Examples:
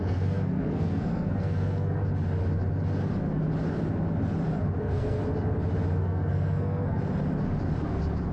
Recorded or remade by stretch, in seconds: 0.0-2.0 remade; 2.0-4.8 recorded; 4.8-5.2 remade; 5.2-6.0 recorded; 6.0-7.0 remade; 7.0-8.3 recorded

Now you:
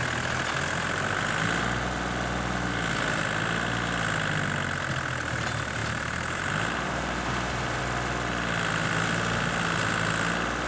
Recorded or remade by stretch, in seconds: 0.0-5.8 recorded; 5.8-7.8 remade; 7.8-10.7 recorded

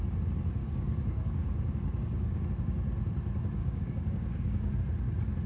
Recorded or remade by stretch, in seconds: 0.0-0.6 recorded; 0.6-2.5 remade; 2.5-3.6 recorded; 3.6-4.8 remade; 4.8-5.5 recorded